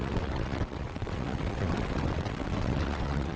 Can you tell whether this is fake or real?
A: fake